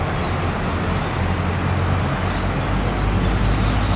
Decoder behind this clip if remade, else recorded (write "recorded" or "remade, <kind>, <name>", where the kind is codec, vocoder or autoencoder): recorded